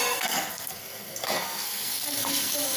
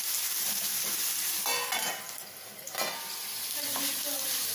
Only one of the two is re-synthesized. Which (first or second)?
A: first